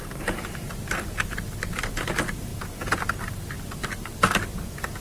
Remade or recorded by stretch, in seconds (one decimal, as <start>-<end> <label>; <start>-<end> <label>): 0.0-5.0 recorded

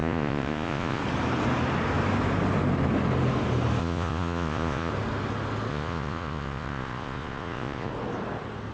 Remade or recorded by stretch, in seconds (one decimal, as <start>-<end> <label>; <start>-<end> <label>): 0.0-1.0 remade; 1.0-3.8 recorded; 3.8-4.9 remade; 4.9-5.7 recorded; 5.7-7.9 remade; 7.9-8.7 recorded

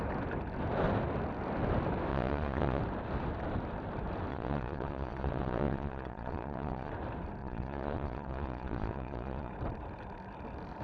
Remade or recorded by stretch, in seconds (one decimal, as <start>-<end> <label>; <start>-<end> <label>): 0.0-2.1 recorded; 2.1-2.8 remade; 2.8-4.3 recorded; 4.3-6.9 remade; 6.9-7.4 recorded; 7.4-9.5 remade; 9.5-10.8 recorded

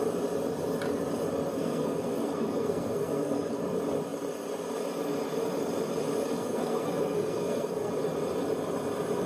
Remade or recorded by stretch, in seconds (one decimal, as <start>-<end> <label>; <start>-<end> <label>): 0.0-1.5 recorded; 1.5-3.6 remade; 3.6-6.4 recorded; 6.4-7.9 remade; 7.9-9.3 recorded

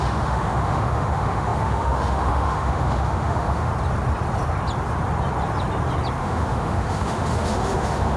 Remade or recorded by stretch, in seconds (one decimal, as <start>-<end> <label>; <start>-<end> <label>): 0.0-3.7 remade; 3.7-6.2 recorded; 6.2-8.2 remade

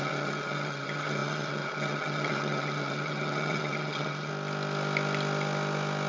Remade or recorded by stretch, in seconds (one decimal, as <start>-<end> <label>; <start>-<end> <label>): 0.0-4.3 remade; 4.3-6.1 recorded

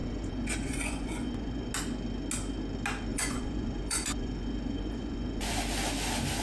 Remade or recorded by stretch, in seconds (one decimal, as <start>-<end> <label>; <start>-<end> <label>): 0.0-1.7 remade; 1.7-3.1 recorded; 3.1-5.5 remade; 5.5-6.4 recorded